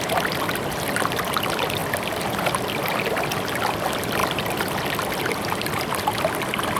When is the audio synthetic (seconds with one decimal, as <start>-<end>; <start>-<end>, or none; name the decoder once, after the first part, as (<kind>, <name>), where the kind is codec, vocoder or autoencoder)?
1.8-2.8 (vocoder, BigVGAN v2); 4.2-6.0